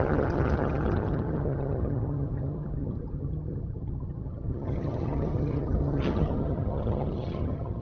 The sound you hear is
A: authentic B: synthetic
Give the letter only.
B